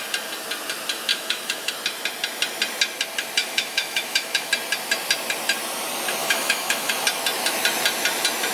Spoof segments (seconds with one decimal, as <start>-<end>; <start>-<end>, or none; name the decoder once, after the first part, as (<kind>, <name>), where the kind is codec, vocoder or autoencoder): 1.1-1.7 (autoencoder, DAC-VAE); 3.4-4.5; 6.2-6.9